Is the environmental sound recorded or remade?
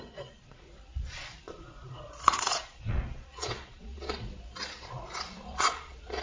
remade